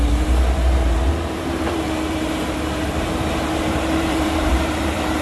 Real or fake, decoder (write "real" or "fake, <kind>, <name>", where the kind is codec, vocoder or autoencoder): fake, vocoder, BigVGAN v2